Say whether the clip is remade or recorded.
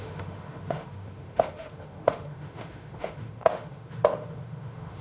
remade